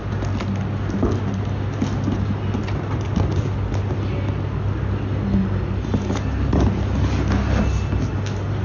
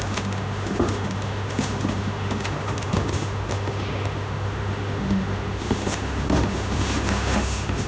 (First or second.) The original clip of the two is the first